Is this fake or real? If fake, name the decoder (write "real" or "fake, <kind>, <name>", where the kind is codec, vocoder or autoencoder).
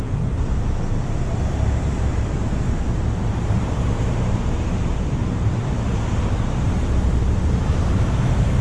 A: fake, vocoder, BigVGAN v2